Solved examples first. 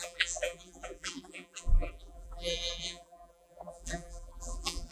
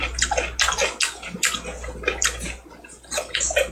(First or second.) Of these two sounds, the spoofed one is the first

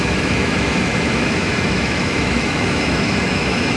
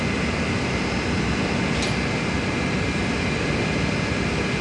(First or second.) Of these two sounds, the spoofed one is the first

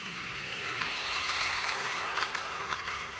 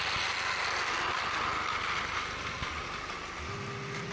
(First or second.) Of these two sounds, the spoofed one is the first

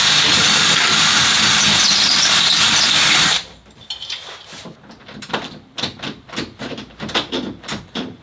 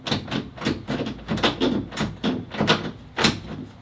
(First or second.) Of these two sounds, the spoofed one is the first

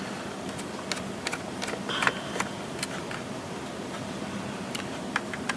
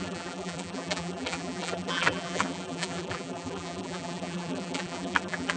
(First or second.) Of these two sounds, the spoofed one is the second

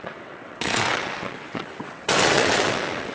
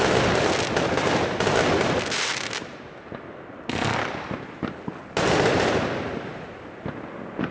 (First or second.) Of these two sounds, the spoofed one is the first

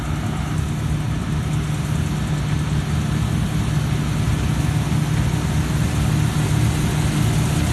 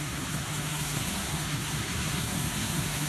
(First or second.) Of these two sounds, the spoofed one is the second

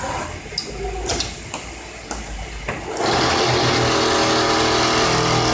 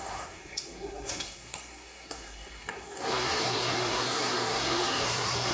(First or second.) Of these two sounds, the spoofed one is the second